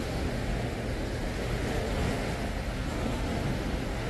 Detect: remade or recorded remade